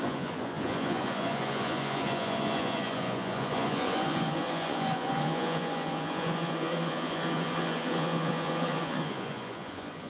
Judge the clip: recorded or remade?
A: remade